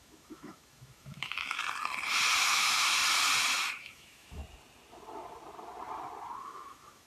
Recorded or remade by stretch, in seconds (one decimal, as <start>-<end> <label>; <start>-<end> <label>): 0.0-1.6 remade; 1.6-2.4 recorded; 2.4-3.0 remade; 3.0-3.6 recorded; 3.6-4.4 remade; 4.4-6.4 recorded; 6.4-7.1 remade